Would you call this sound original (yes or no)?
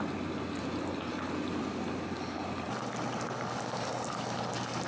yes